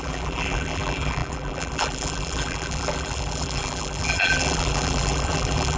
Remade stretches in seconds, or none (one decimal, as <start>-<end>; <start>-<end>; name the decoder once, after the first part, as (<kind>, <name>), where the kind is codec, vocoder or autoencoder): 0.0-5.8 (vocoder, BigVGAN v2)